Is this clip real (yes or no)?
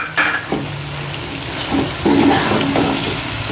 yes